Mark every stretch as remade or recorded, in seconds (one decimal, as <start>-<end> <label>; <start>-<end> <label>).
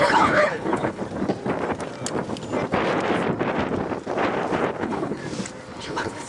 0.0-1.0 remade; 1.0-4.8 recorded; 4.8-5.2 remade; 5.2-5.8 recorded; 5.8-6.3 remade